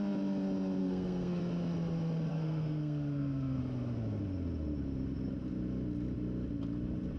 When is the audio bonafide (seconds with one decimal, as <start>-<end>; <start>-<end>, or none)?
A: 0.0-0.8; 1.4-2.3; 3.6-7.2